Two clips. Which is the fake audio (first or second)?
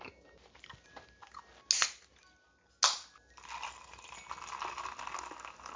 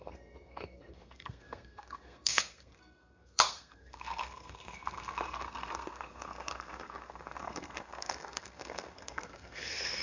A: second